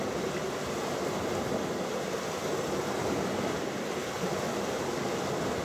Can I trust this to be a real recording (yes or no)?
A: yes